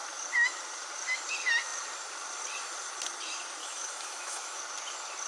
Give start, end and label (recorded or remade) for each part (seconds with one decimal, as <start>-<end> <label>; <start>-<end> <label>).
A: 0.0-3.6 recorded; 3.6-4.6 remade; 4.6-5.3 recorded